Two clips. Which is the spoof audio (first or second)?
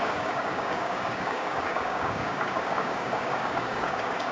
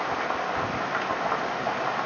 first